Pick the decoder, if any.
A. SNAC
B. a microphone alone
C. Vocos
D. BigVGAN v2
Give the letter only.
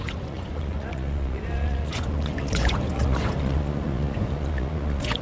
C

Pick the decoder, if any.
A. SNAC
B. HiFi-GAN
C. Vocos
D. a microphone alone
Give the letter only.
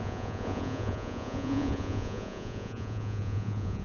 C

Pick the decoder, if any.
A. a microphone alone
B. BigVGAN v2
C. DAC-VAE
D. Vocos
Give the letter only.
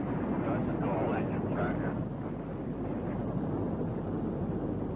A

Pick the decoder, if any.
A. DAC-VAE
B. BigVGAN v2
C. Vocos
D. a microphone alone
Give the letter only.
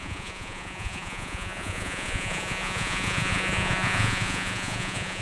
C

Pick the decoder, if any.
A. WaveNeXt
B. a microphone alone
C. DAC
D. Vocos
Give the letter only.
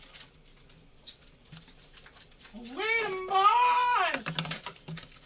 B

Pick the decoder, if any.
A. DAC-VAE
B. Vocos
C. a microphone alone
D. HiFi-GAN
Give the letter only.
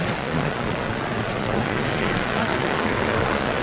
B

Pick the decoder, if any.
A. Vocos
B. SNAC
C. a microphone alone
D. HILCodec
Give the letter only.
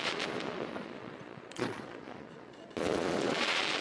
A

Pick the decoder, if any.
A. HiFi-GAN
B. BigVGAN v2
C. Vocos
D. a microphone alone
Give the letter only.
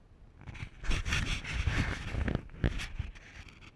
D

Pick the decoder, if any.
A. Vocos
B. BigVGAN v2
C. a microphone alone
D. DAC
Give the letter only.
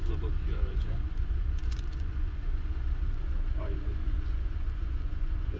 A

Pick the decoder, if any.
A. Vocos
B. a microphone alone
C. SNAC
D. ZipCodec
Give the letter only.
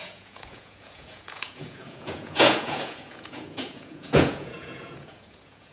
A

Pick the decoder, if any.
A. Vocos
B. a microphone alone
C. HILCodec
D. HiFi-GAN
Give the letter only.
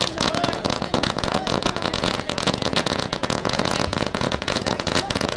A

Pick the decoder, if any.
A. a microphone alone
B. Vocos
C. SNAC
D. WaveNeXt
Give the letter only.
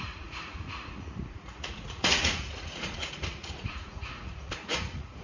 B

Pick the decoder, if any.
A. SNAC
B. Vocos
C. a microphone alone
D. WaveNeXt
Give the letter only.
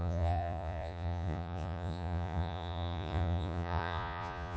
B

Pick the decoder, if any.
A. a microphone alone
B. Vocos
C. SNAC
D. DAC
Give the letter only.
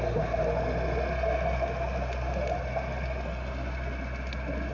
A